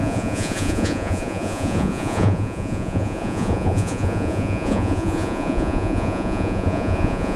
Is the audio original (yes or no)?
no